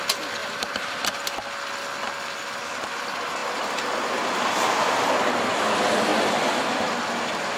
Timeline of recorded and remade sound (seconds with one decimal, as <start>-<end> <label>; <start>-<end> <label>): 0.0-0.4 recorded; 0.4-1.0 remade; 1.0-7.6 recorded